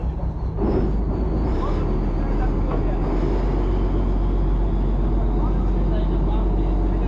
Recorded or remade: recorded